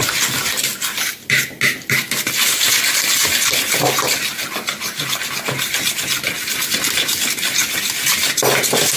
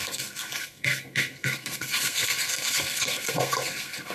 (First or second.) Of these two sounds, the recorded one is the first